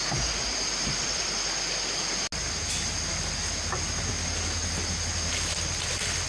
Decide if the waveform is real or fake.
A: real